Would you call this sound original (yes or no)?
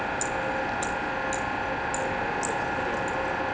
yes